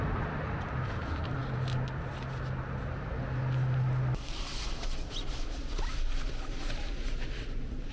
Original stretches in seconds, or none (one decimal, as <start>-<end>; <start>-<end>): 0.0-7.9

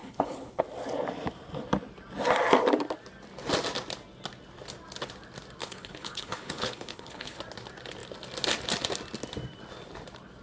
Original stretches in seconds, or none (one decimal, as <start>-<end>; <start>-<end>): 0.6-5.6; 7.4-10.4

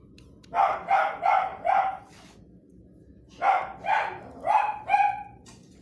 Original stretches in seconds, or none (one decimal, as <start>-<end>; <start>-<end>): 0.0-1.5; 2.0-5.8

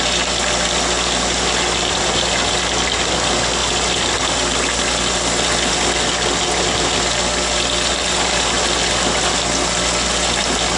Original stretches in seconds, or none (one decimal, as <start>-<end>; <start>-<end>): 0.0-10.8

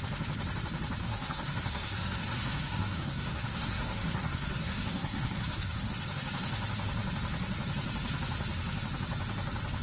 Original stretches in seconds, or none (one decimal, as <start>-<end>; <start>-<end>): 0.0-1.0; 5.9-9.8

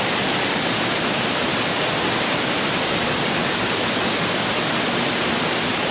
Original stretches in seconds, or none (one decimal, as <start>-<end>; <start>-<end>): 1.5-5.0

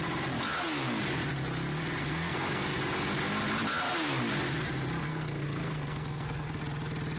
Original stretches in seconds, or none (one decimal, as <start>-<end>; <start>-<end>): 0.0-2.0; 2.8-5.0; 6.6-7.2